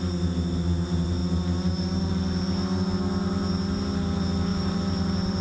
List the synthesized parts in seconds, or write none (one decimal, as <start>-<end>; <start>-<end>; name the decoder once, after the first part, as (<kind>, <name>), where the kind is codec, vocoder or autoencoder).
4.5-5.4 (vocoder, BigVGAN v2)